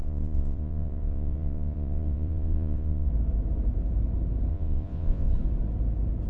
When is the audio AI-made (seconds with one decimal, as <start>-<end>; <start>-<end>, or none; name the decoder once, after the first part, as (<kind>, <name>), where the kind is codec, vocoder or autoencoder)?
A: 0.0-3.1 (vocoder, Vocos); 4.5-5.3